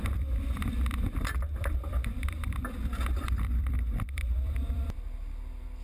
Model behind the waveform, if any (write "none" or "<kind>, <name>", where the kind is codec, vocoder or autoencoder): vocoder, BigVGAN v2